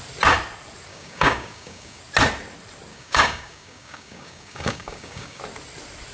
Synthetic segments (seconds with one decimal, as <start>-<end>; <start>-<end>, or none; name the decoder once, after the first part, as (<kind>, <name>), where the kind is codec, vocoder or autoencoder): 0.9-2.0 (codec, DAC); 2.9-5.4